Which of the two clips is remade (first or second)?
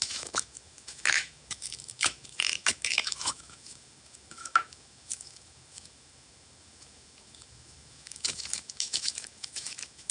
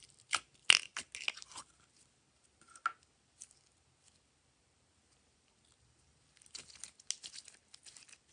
first